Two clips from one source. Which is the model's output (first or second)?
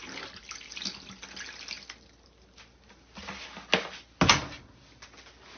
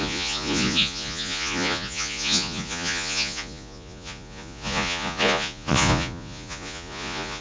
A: second